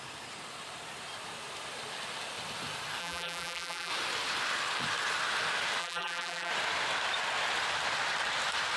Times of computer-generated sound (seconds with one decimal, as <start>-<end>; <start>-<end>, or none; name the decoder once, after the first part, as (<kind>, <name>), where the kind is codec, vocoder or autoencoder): 3.0-3.9 (vocoder, BigVGAN v2); 5.8-6.5